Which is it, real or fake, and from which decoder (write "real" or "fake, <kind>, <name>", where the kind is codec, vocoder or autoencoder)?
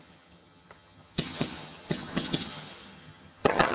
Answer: fake, vocoder, HiFi-GAN